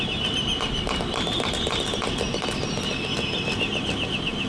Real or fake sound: real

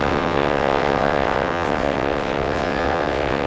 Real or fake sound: fake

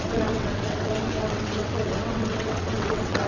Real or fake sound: fake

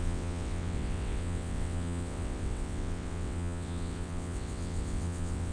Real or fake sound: fake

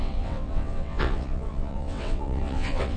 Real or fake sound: fake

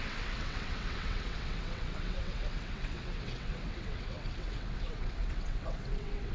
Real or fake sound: fake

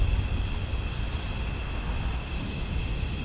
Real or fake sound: real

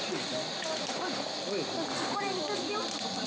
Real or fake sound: real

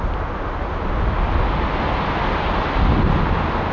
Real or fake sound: real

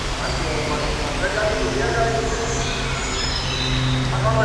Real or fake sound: real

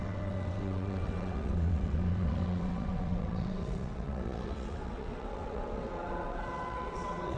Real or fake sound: fake